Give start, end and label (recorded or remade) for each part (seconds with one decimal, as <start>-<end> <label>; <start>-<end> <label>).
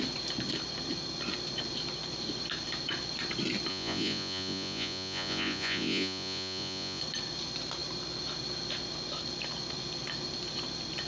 0.0-3.7 recorded; 3.7-7.0 remade; 7.0-11.1 recorded